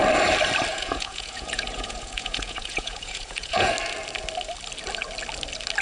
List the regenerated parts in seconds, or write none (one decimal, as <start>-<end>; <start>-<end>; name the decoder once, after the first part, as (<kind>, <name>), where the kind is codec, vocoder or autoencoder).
0.7-3.7 (vocoder, Vocos)